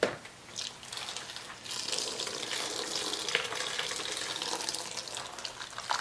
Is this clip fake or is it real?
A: real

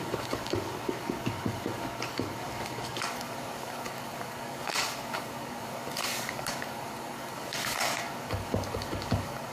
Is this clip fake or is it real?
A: fake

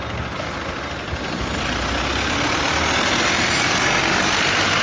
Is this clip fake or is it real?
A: real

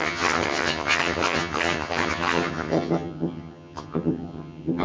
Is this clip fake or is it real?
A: fake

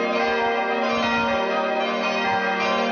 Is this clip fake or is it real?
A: real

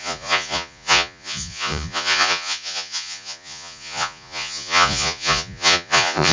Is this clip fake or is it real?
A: fake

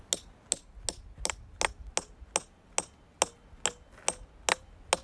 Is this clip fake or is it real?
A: real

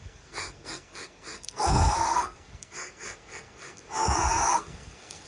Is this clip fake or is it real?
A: fake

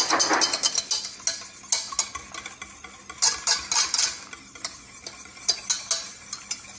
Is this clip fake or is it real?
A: real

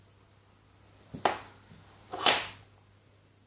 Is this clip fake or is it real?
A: real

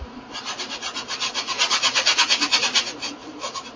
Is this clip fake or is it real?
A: fake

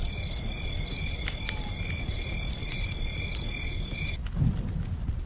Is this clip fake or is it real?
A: real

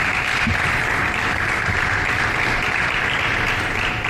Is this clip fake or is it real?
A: real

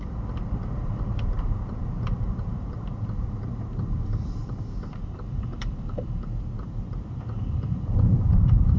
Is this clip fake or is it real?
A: fake